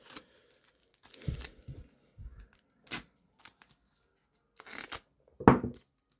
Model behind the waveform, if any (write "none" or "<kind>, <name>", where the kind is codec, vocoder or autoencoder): none